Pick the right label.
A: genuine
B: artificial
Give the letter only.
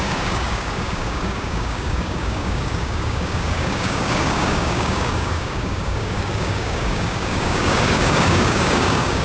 B